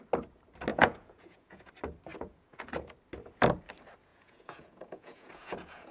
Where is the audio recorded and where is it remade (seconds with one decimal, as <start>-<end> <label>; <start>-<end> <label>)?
0.0-0.7 recorded; 0.7-1.7 remade; 1.7-2.1 recorded; 2.1-2.7 remade; 2.7-4.1 recorded; 4.1-5.9 remade

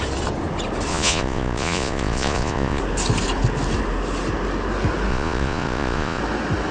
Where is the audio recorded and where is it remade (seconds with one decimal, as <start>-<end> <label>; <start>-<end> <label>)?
0.0-0.9 recorded; 0.9-2.8 remade; 2.8-5.1 recorded; 5.1-6.2 remade; 6.2-6.7 recorded

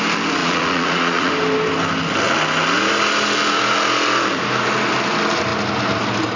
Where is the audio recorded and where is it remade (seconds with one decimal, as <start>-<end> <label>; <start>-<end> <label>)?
0.0-0.4 recorded; 0.4-1.3 remade; 1.3-6.4 recorded

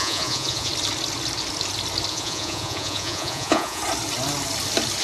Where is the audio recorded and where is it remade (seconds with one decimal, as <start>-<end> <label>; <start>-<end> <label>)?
0.0-0.7 remade; 0.7-2.1 recorded; 2.1-3.8 remade; 3.8-5.0 recorded